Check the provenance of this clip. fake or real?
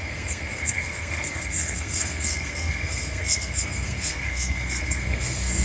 fake